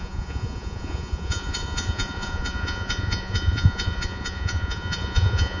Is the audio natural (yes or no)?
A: no